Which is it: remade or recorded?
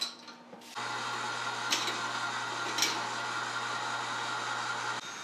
recorded